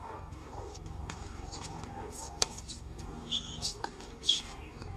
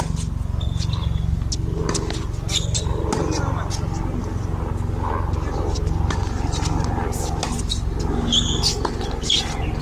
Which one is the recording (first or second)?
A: second